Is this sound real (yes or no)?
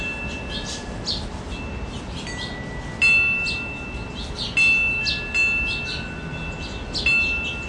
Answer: yes